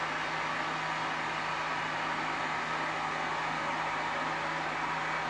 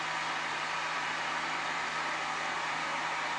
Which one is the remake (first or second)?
second